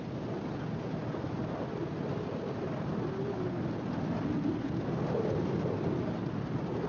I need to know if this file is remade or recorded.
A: recorded